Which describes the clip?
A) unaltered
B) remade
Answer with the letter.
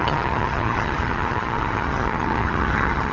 B